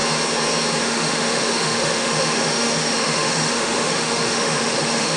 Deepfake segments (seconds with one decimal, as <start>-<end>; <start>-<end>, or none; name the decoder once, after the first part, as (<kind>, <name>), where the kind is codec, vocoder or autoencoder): 0.8-5.2 (autoencoder, DAC-VAE)